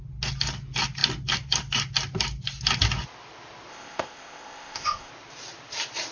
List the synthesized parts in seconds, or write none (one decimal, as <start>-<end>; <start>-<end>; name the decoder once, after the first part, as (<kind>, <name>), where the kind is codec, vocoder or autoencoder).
3.7-5.1 (codec, ZipCodec)